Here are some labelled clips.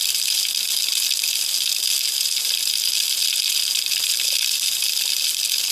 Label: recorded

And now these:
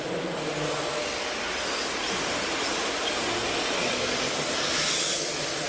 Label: recorded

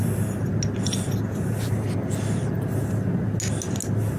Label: recorded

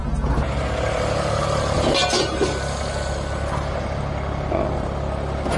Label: recorded